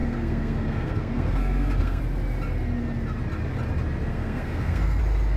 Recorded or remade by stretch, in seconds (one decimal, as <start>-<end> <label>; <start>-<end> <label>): 0.0-2.0 remade; 2.0-4.1 recorded; 4.1-5.0 remade; 5.0-5.4 recorded